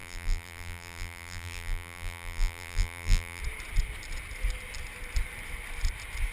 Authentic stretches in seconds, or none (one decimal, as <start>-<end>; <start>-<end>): 3.4-6.3